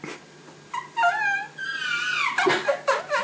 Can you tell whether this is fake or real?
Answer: real